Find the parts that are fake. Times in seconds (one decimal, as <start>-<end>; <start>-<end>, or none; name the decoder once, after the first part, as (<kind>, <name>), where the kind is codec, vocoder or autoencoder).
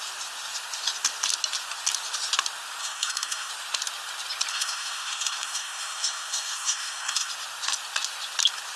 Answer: 2.8-3.5 (codec, SNAC); 4.5-7.3